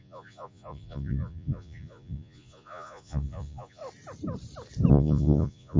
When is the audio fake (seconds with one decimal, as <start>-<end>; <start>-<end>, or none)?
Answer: 0.0-3.8; 4.9-5.8